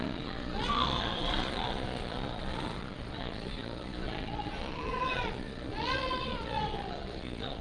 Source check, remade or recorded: remade